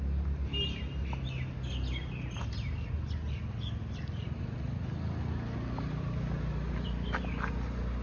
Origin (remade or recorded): recorded